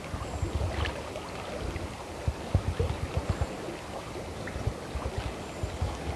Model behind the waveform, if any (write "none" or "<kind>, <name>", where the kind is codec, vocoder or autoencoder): none